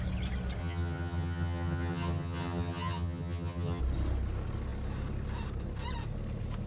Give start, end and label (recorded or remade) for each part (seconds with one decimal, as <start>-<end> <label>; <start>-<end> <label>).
0.0-0.6 recorded; 0.6-3.8 remade; 3.8-6.7 recorded

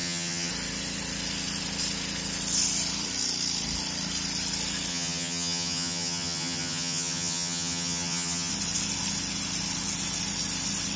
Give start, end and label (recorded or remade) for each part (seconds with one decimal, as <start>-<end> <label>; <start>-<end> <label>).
0.0-0.5 remade; 0.5-4.9 recorded; 4.9-8.5 remade; 8.5-11.0 recorded

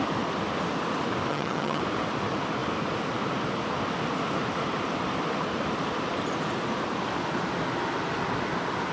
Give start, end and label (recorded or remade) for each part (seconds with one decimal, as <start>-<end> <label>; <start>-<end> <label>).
0.0-1.3 recorded; 1.3-1.8 remade; 1.8-8.9 recorded

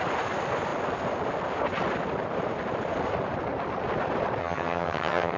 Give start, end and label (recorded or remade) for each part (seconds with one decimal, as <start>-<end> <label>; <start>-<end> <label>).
0.0-4.4 recorded; 4.4-5.4 remade

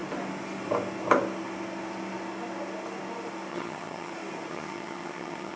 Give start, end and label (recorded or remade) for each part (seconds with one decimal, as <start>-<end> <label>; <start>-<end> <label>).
0.0-3.5 recorded; 3.5-4.1 remade; 4.1-4.5 recorded; 4.5-5.6 remade

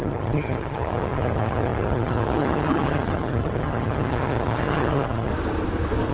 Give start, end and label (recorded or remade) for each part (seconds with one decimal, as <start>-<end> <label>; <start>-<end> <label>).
0.0-5.3 remade; 5.3-6.1 recorded

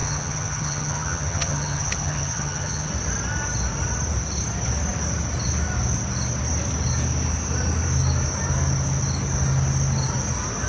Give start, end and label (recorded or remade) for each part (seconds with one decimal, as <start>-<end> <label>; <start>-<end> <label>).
0.0-2.9 remade; 2.9-10.7 recorded